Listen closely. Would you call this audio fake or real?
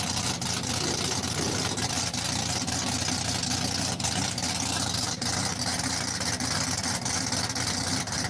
real